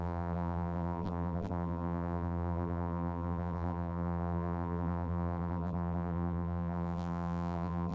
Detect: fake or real fake